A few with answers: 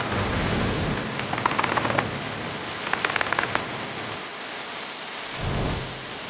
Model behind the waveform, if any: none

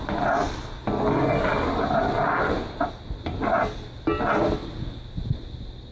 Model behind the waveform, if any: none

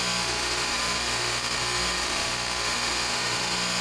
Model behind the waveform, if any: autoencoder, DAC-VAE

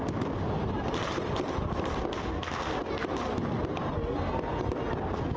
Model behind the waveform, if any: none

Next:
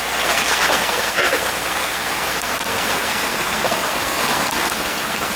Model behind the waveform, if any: codec, SNAC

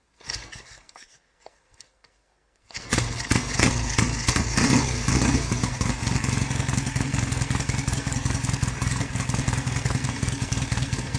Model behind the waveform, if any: codec, SNAC